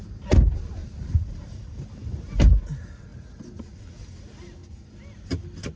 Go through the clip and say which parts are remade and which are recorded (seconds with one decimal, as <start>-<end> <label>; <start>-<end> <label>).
0.0-0.8 recorded; 0.8-1.6 remade; 1.6-3.1 recorded; 3.1-3.6 remade; 3.6-5.8 recorded